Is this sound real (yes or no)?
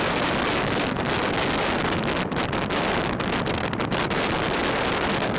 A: yes